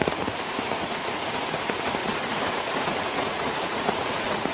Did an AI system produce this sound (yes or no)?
yes